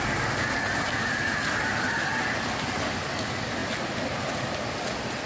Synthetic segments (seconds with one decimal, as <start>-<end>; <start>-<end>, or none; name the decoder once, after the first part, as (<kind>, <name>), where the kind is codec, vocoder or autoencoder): none